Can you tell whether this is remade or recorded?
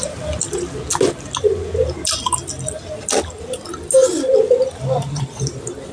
recorded